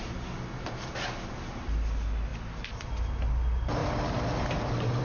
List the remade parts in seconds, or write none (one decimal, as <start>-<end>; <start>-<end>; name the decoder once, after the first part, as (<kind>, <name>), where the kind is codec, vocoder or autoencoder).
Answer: none